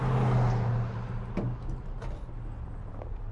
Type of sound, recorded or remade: recorded